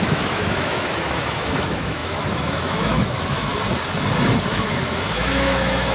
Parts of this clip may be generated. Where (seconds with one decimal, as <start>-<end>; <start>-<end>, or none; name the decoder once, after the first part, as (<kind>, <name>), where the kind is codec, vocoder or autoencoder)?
0.0-3.5 (autoencoder, DAC-VAE); 4.5-5.9